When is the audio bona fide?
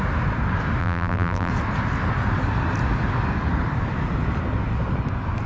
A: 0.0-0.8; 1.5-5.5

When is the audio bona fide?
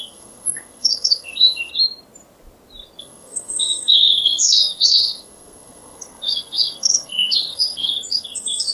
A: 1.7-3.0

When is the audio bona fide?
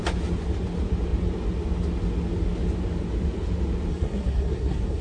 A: 0.0-3.9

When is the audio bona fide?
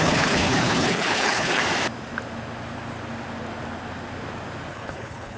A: 1.6-4.7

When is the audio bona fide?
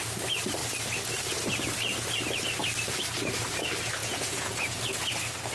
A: 0.0-4.0; 4.8-5.5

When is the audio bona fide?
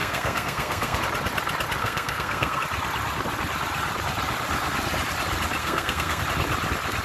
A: 1.0-1.8; 2.6-5.6; 6.2-7.0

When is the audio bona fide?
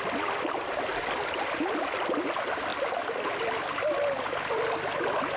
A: 0.0-5.4